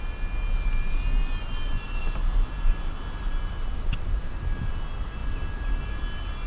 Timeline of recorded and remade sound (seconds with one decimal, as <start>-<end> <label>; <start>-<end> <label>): 0.0-6.5 recorded